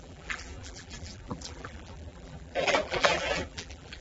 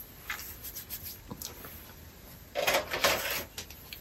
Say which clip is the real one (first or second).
second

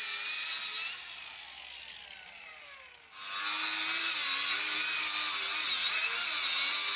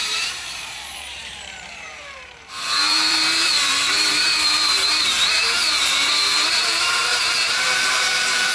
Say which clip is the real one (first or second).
first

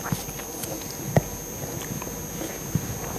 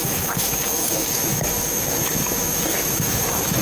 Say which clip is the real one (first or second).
first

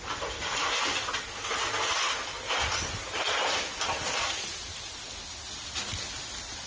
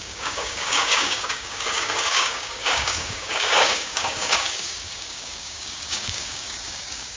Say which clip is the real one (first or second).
first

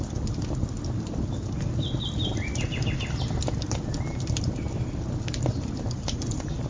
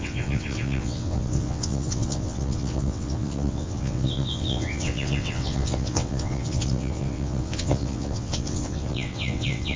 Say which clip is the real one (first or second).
first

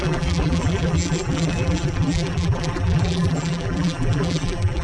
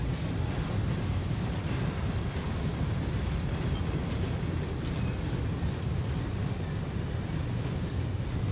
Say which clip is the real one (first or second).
second